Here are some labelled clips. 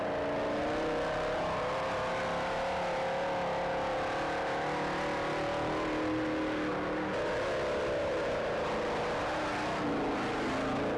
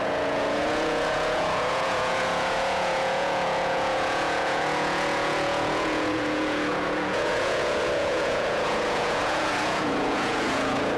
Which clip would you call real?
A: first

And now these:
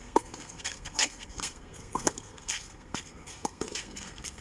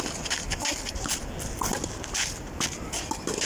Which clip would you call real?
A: second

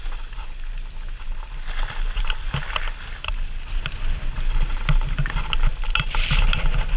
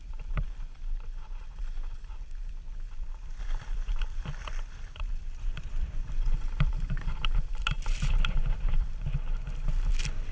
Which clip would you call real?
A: first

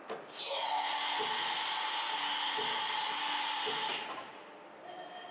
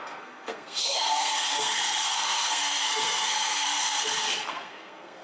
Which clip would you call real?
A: first